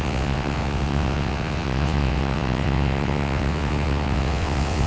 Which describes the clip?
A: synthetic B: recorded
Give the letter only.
A